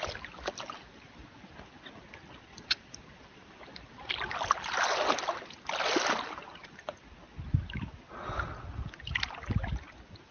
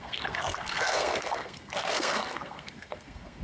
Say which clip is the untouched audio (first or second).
first